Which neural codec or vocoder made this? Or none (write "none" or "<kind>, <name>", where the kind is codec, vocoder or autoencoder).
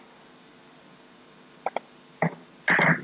none